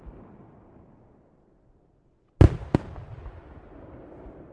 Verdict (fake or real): real